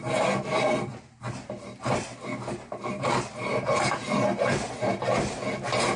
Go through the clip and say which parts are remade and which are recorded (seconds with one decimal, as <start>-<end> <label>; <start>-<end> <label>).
0.0-6.0 recorded